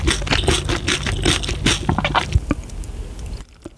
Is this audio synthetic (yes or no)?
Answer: no